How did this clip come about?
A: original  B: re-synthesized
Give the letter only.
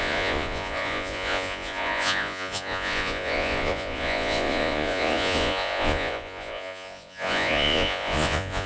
B